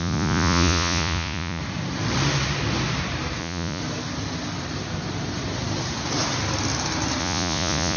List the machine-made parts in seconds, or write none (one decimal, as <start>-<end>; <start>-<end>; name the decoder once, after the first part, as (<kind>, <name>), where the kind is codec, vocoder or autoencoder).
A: 0.0-1.6 (vocoder, Vocos); 3.4-3.8; 7.2-8.0